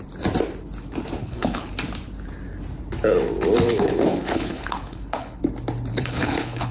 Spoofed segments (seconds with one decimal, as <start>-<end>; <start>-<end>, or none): 1.2-1.7; 3.7-5.4; 5.9-6.7